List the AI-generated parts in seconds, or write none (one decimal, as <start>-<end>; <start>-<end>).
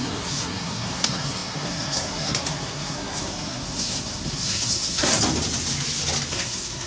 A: 0.0-5.1; 6.3-6.9